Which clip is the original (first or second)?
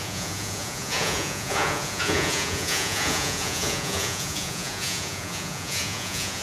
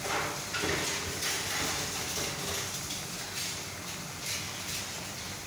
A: second